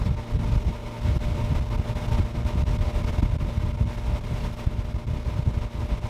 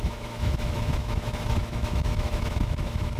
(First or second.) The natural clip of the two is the first